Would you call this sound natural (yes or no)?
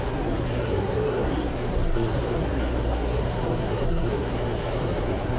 no